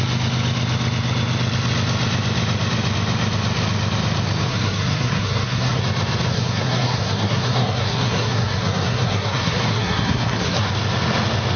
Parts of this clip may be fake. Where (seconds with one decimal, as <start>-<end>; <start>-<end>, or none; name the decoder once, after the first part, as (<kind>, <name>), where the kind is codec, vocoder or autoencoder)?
4.5-5.8 (codec, SNAC); 6.3-10.7